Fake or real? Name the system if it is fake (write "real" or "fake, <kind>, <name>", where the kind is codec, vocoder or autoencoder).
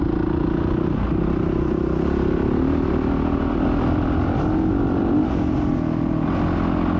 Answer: real